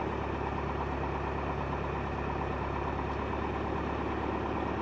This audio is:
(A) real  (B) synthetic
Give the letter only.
A